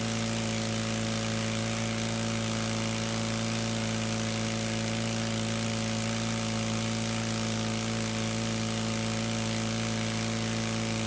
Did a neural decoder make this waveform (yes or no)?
no